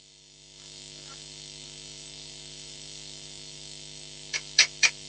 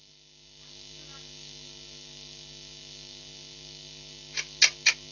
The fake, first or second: first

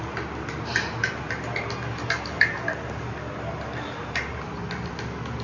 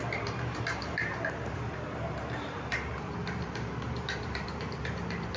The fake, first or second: second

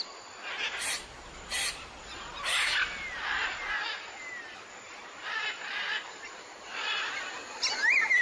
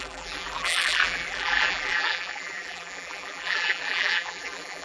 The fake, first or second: second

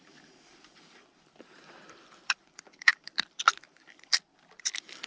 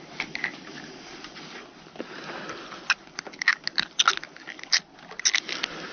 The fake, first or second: first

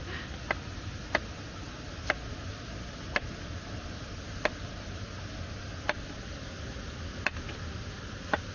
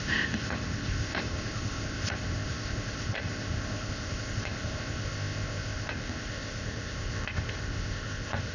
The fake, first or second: second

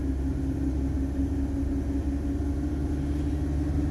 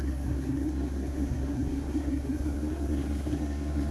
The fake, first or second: second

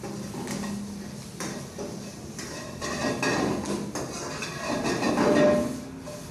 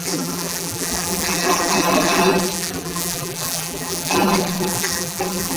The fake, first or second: second